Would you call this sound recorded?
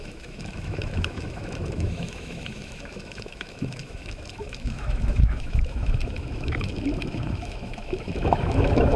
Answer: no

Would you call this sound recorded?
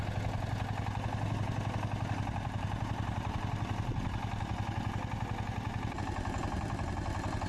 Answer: yes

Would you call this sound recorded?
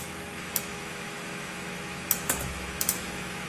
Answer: no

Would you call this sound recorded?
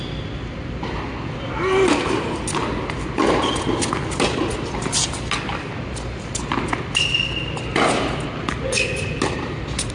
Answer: yes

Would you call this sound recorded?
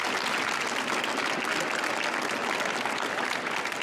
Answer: yes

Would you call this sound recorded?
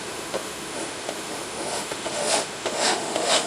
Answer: no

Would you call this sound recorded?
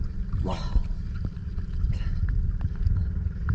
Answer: yes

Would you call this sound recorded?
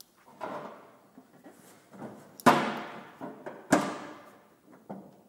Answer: yes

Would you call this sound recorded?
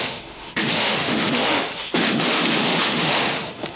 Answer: no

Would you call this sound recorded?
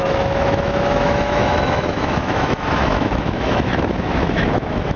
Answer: no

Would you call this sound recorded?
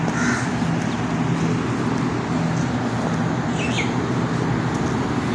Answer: yes